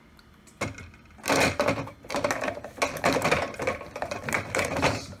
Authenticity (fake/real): real